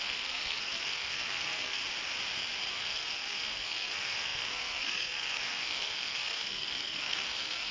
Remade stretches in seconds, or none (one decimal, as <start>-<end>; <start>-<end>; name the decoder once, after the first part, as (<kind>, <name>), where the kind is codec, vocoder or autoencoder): 0.0-1.8 (codec, SNAC); 2.7-7.7